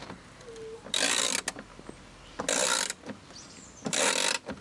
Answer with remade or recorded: recorded